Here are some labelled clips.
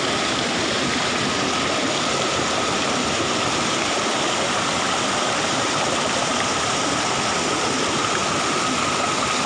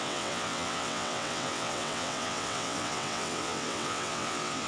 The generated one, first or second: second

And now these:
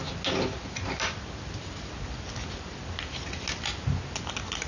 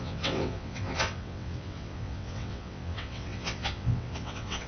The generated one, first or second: second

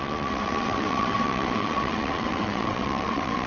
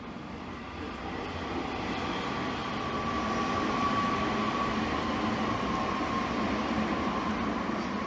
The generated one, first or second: first